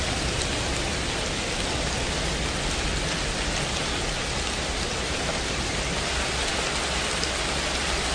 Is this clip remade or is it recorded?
recorded